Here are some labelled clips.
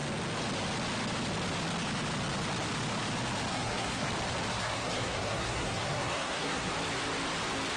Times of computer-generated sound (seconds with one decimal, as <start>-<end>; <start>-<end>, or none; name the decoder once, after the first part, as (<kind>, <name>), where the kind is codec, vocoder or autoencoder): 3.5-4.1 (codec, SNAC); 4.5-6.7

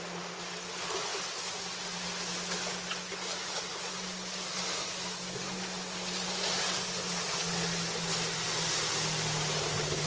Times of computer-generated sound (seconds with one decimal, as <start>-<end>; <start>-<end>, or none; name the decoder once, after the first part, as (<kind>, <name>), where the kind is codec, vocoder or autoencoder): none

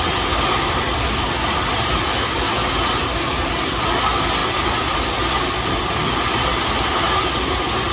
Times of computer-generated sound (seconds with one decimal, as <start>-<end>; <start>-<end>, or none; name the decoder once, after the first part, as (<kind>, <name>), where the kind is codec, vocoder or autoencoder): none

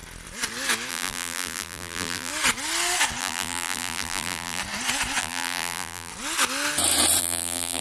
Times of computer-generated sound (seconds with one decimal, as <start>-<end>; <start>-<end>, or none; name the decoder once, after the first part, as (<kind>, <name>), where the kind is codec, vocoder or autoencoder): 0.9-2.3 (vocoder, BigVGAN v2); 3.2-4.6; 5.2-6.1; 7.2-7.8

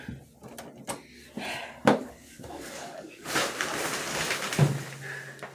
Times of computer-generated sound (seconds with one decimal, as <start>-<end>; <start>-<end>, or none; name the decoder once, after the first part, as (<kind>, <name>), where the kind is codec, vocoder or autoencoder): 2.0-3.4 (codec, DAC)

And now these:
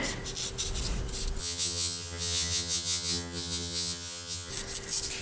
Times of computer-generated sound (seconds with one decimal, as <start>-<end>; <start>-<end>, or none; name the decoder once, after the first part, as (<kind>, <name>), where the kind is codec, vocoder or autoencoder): 1.4-4.5 (vocoder, HiFi-GAN)

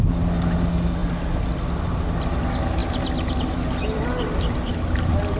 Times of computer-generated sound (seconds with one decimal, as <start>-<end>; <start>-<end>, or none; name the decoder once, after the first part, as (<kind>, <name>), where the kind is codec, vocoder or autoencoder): none

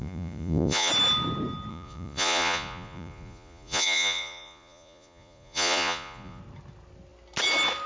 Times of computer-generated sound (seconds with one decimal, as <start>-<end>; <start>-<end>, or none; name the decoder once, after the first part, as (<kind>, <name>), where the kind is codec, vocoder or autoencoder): 0.0-0.9 (vocoder, Vocos); 1.7-6.4